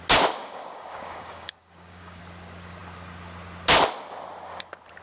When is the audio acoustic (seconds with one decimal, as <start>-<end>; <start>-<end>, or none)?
0.0-0.4; 2.2-5.0